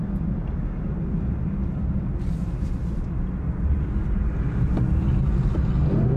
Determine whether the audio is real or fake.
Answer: real